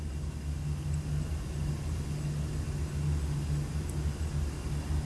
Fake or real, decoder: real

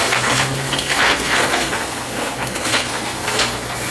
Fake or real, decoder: fake, codec, SNAC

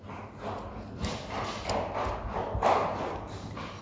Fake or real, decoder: real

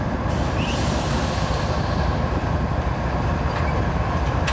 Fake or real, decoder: real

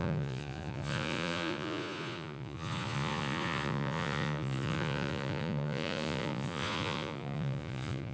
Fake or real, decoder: fake, vocoder, Vocos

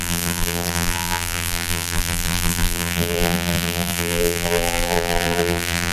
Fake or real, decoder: fake, vocoder, BigVGAN v2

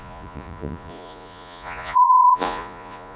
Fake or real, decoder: fake, vocoder, Vocos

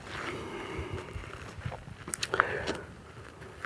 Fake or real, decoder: real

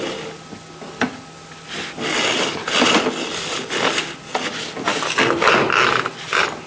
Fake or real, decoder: real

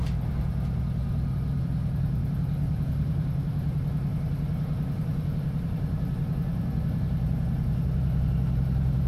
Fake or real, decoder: fake, vocoder, BigVGAN v2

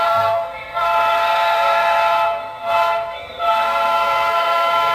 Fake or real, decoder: fake, codec, SNAC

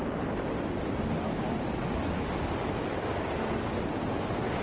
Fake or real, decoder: real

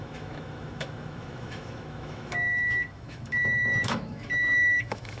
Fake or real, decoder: fake, autoencoder, DAC-VAE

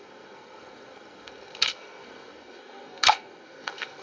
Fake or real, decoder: fake, codec, SNAC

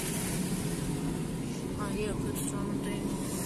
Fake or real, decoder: real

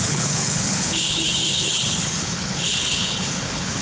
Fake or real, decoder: fake, codec, HILCodec